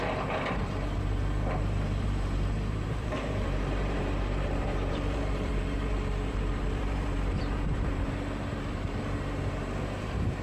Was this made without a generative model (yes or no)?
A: no